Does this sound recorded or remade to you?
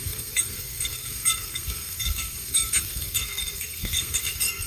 remade